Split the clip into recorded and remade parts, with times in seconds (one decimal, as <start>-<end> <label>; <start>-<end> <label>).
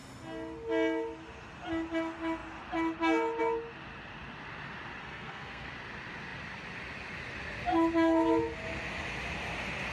0.0-5.0 recorded; 5.0-5.7 remade; 5.7-9.9 recorded